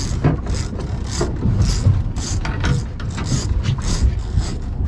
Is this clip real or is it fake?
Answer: real